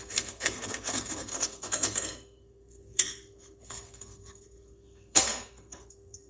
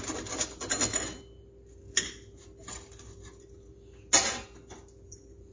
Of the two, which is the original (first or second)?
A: second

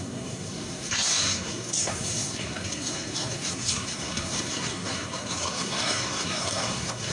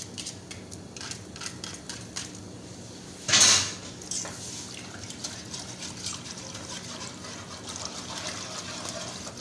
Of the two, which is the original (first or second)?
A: second